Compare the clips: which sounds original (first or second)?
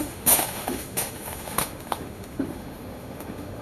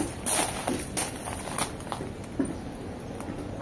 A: second